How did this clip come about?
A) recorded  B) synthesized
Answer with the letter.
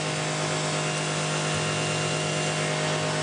A